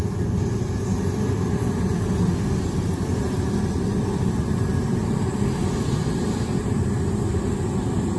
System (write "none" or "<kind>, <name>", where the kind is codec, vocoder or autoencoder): none